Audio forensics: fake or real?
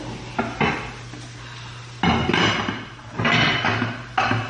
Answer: real